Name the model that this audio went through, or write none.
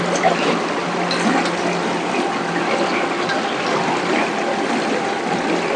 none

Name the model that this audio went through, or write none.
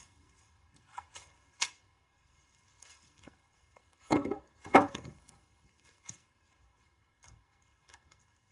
codec, SNAC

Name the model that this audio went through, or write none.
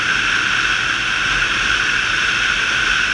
none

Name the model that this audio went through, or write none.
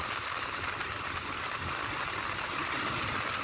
none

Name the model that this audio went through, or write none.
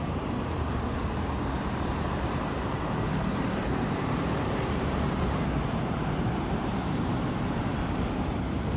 vocoder, BigVGAN v2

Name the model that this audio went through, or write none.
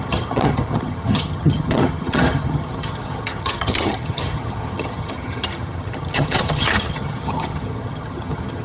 vocoder, HiFi-GAN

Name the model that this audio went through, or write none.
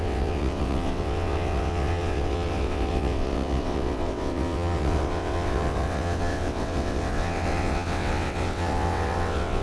vocoder, WaveNeXt